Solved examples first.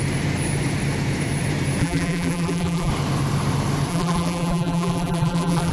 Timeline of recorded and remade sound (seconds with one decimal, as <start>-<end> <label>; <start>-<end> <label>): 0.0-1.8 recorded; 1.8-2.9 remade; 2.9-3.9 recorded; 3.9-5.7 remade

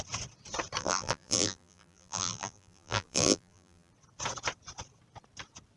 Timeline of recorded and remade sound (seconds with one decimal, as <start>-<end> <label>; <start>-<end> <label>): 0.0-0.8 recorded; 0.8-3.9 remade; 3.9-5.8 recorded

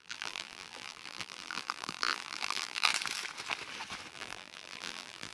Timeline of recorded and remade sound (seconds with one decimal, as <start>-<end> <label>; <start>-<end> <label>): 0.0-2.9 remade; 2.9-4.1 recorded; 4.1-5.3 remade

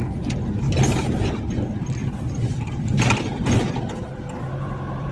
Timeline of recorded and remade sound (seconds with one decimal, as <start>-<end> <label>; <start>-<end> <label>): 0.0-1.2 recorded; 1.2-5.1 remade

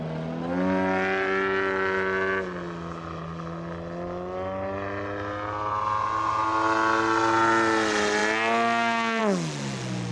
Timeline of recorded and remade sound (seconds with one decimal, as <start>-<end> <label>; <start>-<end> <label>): 0.0-10.1 recorded

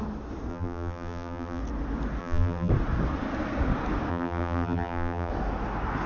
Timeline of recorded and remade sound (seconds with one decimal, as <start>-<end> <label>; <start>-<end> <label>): 0.0-0.5 recorded; 0.5-1.6 remade; 1.6-2.2 recorded; 2.2-2.7 remade; 2.7-4.1 recorded; 4.1-5.3 remade; 5.3-6.1 recorded

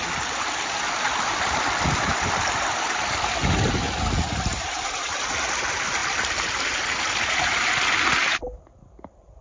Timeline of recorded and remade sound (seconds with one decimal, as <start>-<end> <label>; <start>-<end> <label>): 0.0-4.5 recorded; 4.5-5.1 remade; 5.1-9.4 recorded